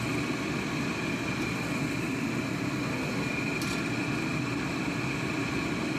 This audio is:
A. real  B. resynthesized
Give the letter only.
A